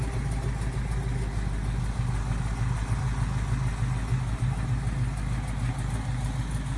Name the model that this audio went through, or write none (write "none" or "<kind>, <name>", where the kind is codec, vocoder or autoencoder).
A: none